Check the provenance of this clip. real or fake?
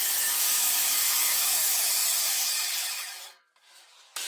fake